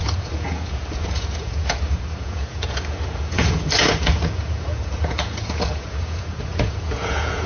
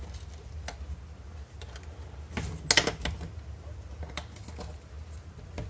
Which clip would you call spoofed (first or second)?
first